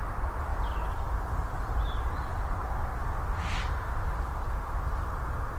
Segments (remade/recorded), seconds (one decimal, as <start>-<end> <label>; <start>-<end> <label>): 0.0-0.5 remade; 0.5-1.6 recorded; 1.6-5.6 remade